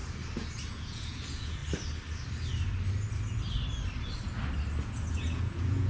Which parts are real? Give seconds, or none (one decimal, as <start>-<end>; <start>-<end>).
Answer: 0.0-0.7; 1.6-5.1